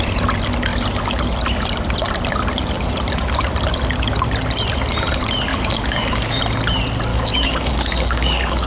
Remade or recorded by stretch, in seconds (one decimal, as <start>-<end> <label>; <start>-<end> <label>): 0.0-5.5 recorded; 5.5-6.4 remade; 6.4-7.1 recorded; 7.1-8.7 remade